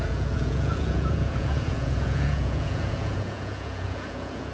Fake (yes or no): yes